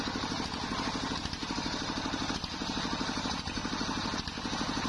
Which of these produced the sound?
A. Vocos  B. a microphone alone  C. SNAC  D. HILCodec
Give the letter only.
B